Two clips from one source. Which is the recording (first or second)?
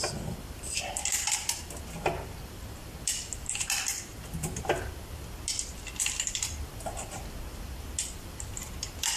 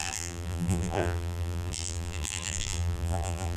first